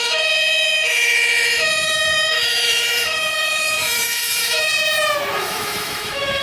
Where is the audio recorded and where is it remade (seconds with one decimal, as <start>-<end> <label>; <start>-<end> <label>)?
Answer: 0.0-4.7 remade; 4.7-5.4 recorded; 5.4-6.4 remade